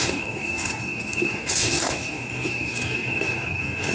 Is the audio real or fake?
fake